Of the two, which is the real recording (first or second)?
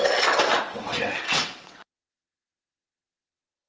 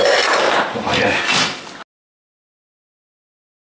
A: second